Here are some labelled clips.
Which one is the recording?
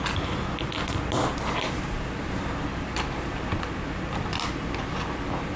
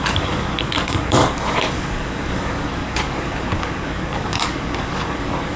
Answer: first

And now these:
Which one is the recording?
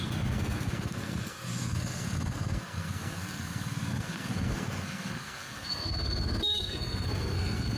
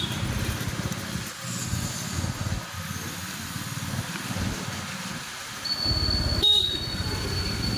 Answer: second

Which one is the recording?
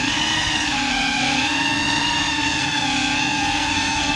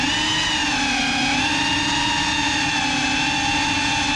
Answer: second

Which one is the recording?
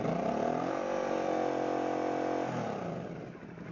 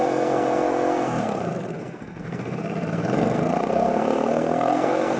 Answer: first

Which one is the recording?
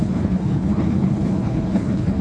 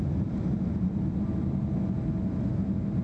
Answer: second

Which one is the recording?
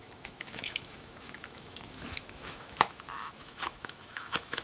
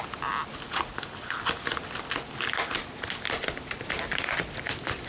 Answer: second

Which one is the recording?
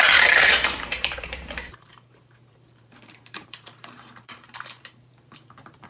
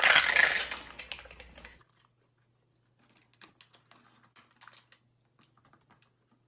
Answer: second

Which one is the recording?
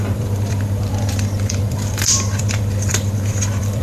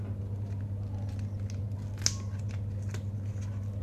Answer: second